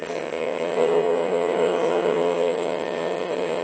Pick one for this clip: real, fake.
fake